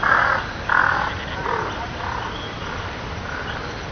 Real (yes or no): yes